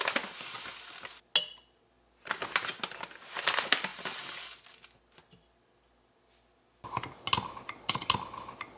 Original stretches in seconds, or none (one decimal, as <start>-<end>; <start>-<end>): 0.0-8.8